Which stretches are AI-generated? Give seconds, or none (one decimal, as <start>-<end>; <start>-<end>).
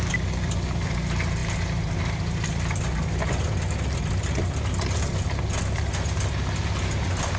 none